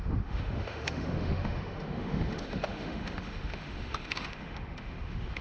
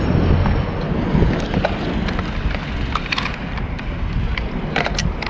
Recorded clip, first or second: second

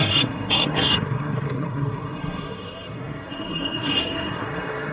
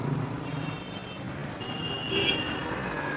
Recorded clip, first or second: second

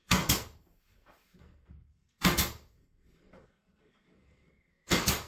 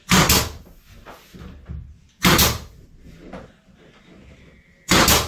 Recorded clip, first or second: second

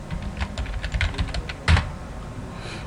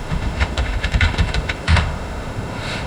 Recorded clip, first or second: first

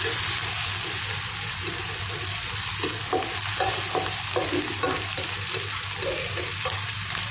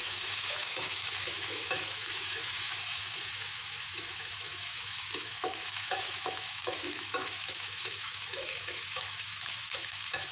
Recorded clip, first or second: first